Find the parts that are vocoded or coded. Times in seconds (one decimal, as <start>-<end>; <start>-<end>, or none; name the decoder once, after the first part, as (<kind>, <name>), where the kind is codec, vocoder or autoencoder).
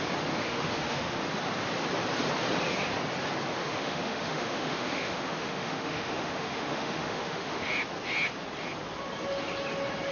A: 0.4-1.2 (autoencoder, DAC-VAE); 3.6-7.7